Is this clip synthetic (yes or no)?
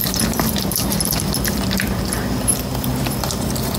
yes